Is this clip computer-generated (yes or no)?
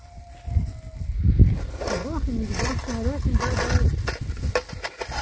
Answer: no